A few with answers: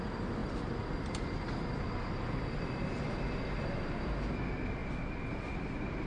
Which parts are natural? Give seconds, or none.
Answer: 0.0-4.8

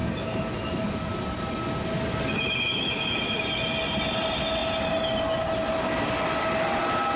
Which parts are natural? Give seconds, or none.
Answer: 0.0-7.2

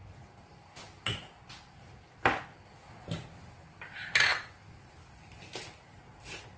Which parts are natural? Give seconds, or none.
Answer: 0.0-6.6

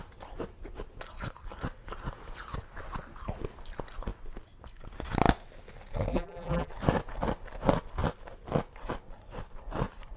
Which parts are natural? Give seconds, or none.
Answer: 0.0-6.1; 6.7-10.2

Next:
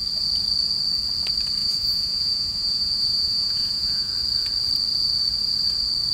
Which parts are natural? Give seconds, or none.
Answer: 0.0-1.6; 4.1-6.1

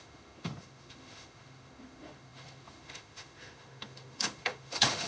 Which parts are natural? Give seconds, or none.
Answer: none

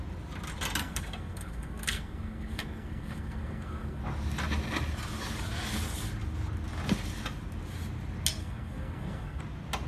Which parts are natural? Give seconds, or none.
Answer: 0.0-0.8; 4.0-8.4; 9.4-9.9

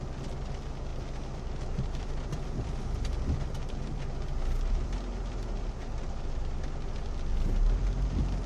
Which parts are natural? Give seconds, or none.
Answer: 0.0-0.9; 5.7-8.5